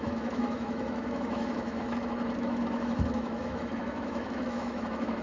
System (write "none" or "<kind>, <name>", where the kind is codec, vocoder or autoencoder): autoencoder, DAC-VAE